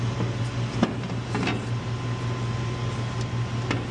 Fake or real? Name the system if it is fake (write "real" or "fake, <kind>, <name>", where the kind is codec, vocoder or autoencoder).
real